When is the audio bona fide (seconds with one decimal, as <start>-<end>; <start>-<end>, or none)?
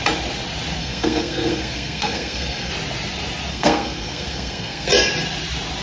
0.0-0.8; 2.7-3.5; 4.9-5.8